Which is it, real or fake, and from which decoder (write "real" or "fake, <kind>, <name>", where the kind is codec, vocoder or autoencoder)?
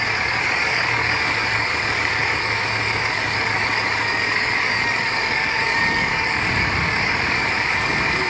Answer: fake, codec, DAC